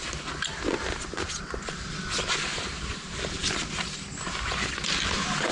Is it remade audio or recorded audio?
recorded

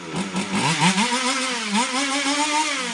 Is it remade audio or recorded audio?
recorded